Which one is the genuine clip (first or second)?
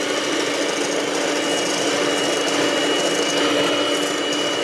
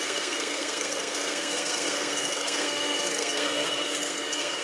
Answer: first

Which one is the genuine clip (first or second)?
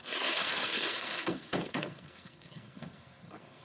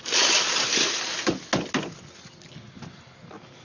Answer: second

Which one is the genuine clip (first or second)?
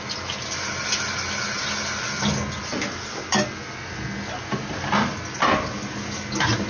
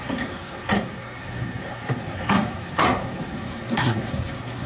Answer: first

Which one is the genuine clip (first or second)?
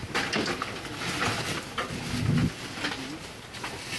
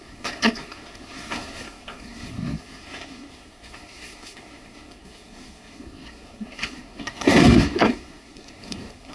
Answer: first